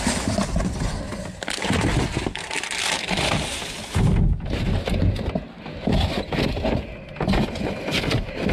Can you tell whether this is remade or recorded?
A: recorded